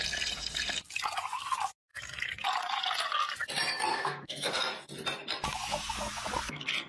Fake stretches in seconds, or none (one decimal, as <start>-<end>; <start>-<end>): 3.9-4.5